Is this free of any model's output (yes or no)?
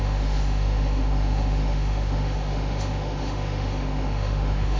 no